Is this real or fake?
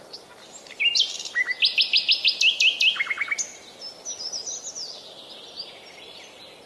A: real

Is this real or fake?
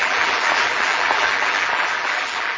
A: fake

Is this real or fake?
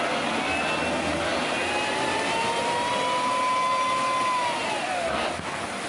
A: real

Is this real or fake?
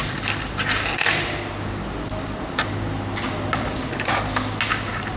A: real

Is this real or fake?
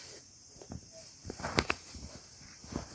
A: fake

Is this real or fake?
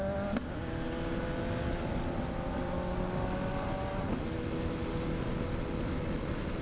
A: real